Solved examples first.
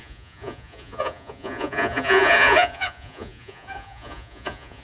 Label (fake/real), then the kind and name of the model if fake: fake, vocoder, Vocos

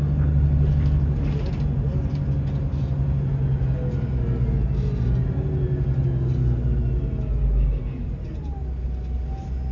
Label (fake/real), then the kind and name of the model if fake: real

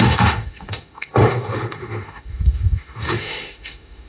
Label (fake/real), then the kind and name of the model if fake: fake, autoencoder, DAC-VAE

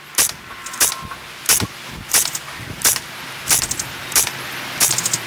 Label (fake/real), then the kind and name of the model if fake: real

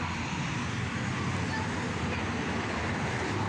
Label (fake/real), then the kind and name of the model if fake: real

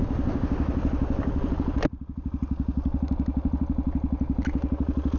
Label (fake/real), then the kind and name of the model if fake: real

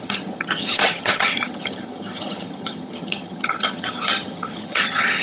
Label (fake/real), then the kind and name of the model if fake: fake, vocoder, HiFi-GAN